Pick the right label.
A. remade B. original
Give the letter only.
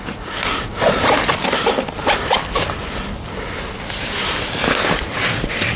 B